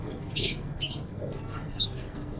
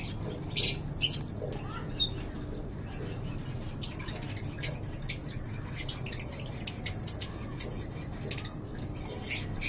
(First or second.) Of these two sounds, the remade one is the first